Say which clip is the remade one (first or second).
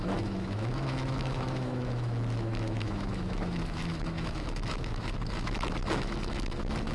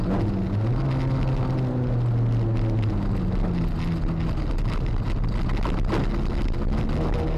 first